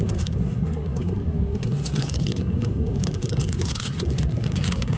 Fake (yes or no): yes